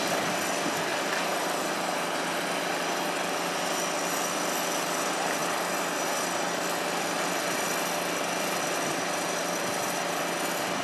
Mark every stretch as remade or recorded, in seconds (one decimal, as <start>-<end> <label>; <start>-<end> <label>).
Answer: 0.0-10.8 recorded